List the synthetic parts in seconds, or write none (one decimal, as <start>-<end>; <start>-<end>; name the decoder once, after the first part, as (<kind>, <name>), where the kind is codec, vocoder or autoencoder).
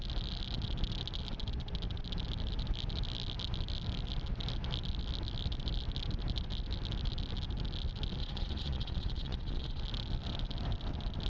8.2-9.8 (vocoder, Vocos)